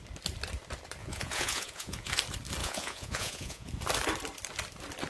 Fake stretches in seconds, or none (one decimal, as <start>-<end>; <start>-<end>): 1.0-2.1; 2.6-3.7